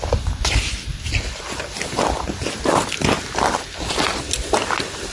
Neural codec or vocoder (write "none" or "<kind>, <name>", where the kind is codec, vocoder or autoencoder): none